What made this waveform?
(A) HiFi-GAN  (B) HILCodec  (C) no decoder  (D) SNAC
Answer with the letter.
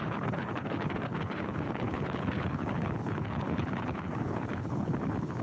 B